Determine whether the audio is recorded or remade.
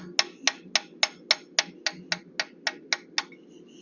recorded